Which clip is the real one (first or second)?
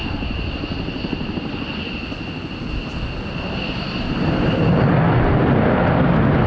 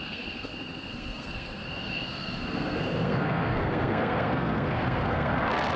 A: first